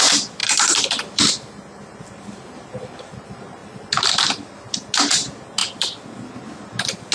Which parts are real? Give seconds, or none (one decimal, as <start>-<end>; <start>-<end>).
0.0-0.4; 1.3-5.6; 6.4-7.1

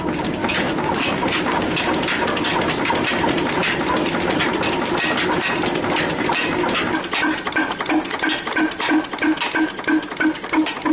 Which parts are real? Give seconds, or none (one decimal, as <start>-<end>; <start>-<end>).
0.0-0.4; 1.8-10.9

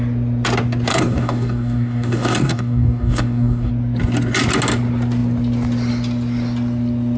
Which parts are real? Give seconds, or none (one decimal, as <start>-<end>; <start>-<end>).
0.0-0.9; 3.7-7.2

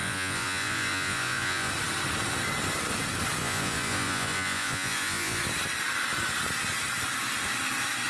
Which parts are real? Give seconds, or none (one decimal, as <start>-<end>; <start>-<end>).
1.7-3.4; 5.4-8.1